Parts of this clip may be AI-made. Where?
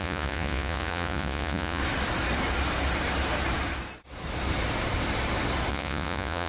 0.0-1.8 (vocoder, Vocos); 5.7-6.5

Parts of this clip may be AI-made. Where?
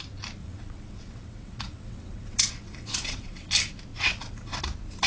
0.4-3.5 (vocoder, WaveNeXt); 3.9-4.6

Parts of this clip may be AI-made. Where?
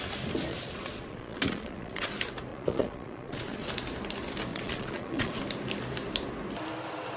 0.5-2.1 (vocoder, Vocos); 2.5-3.7; 4.5-5.4